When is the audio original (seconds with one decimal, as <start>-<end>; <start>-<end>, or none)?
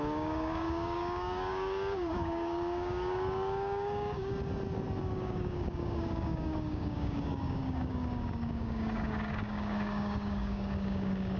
4.3-5.0